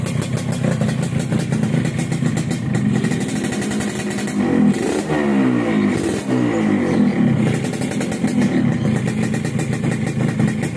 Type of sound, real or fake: real